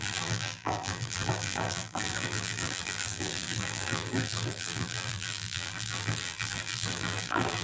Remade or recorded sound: remade